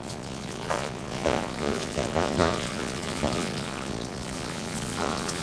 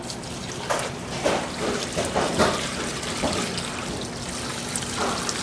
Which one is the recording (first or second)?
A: second